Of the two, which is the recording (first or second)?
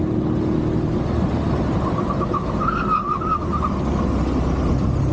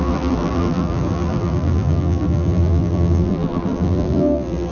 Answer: first